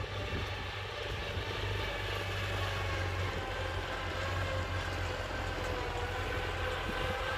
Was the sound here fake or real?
real